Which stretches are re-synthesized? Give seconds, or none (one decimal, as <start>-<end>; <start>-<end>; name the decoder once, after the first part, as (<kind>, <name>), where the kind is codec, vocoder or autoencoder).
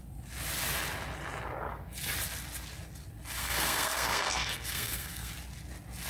3.4-5.3 (codec, SNAC)